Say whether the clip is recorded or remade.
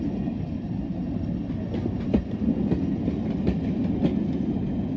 recorded